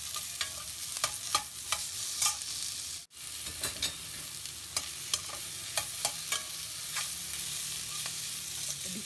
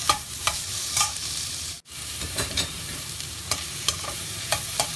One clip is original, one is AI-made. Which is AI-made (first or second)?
second